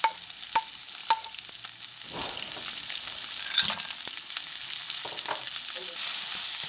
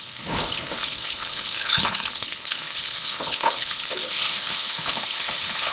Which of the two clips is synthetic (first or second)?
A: second